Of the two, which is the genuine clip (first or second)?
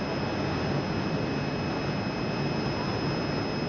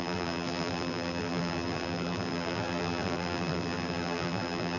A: first